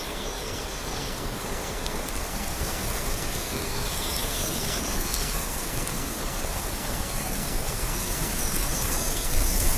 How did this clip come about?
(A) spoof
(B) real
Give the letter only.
A